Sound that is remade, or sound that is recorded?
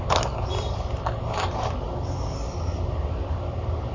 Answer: recorded